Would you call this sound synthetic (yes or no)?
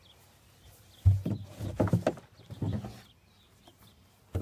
no